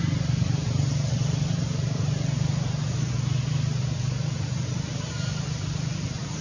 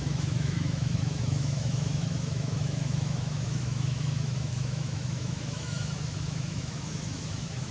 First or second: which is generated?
second